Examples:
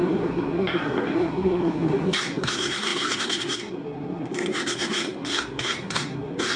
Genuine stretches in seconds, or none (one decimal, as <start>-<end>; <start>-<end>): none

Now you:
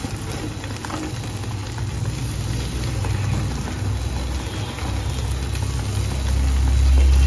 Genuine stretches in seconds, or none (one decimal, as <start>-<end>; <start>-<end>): 0.0-7.3

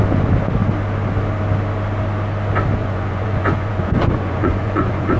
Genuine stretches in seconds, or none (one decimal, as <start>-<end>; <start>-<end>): 0.0-2.8

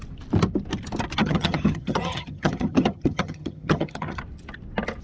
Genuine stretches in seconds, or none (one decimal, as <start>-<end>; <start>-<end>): 0.0-1.2; 4.2-5.0